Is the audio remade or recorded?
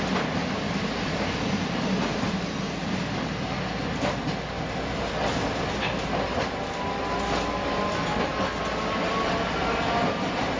recorded